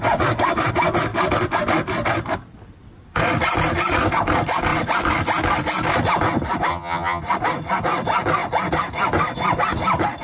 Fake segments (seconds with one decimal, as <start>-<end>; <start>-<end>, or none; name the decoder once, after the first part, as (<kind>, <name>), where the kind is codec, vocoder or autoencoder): 6.7-7.2 (vocoder, HiFi-GAN)